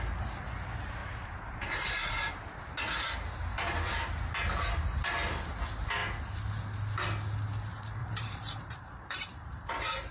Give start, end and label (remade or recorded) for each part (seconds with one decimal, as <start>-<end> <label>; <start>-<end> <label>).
0.0-1.0 recorded; 1.0-1.9 remade; 1.9-8.0 recorded; 8.0-9.7 remade; 9.7-10.1 recorded